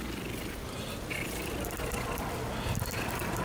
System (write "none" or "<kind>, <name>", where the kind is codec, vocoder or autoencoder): none